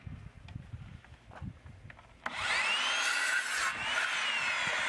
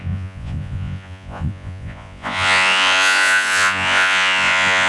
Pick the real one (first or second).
first